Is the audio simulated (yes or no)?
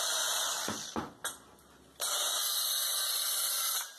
no